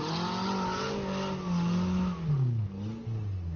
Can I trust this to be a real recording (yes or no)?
yes